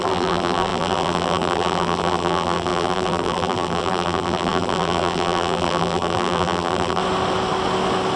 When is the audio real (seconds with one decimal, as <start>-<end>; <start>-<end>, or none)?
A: 7.0-8.2

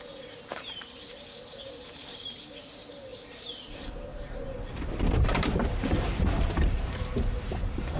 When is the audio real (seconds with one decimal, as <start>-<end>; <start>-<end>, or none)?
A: none

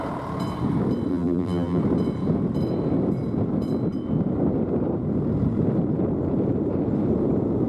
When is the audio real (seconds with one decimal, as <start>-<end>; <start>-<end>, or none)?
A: 0.0-1.1; 1.8-7.7

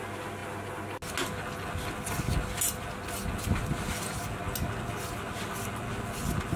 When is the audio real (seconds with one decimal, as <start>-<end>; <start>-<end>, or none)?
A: 0.0-6.6

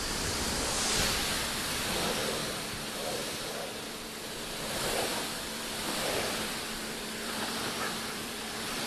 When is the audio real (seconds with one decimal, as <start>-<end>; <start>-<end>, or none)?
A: 2.4-3.4